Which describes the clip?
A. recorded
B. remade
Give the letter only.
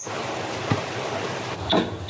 A